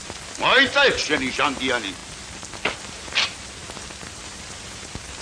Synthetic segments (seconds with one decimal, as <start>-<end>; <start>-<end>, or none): none